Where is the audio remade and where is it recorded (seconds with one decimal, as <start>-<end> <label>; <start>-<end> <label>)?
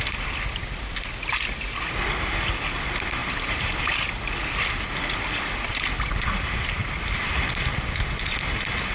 0.0-3.2 recorded; 3.2-4.2 remade; 4.2-6.8 recorded; 6.8-7.7 remade; 7.7-8.9 recorded